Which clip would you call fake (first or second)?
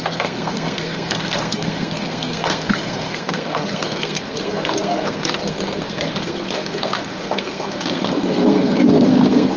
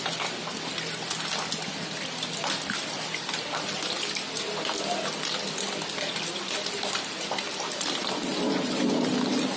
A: first